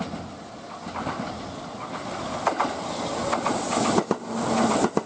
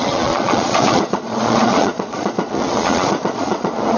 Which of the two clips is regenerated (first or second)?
second